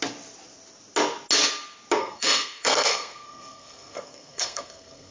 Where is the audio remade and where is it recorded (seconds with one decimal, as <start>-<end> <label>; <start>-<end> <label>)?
0.0-2.0 recorded; 2.0-5.1 remade